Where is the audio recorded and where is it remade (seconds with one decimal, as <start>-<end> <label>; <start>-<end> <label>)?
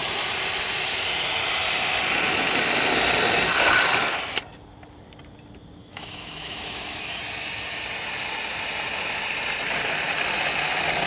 0.0-5.8 recorded; 5.8-7.2 remade; 7.2-11.1 recorded